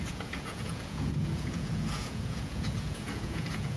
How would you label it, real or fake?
fake